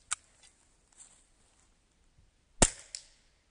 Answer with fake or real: real